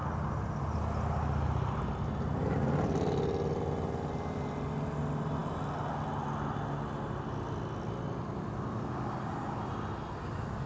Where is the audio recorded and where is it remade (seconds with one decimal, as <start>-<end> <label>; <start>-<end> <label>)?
0.0-10.7 recorded